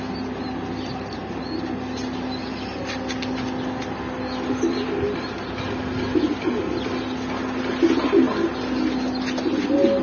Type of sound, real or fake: real